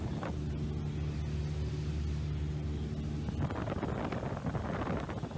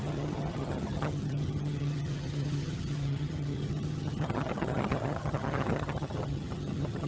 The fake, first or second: second